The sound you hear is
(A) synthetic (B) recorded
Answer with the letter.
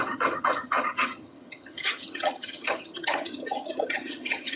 A